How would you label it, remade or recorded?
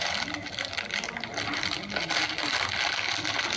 recorded